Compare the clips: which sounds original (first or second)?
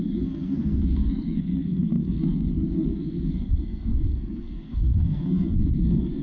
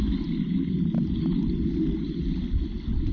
second